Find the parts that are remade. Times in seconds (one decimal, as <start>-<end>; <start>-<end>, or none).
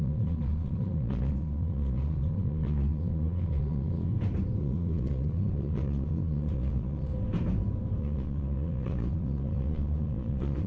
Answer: 0.0-4.1; 4.6-7.1; 8.0-10.7